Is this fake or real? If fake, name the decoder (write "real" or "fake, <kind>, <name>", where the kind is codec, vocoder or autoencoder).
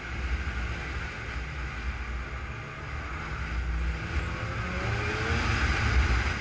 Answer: real